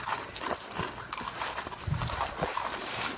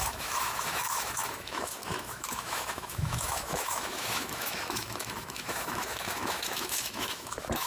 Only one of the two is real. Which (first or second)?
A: first